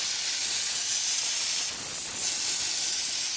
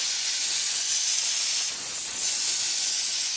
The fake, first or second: second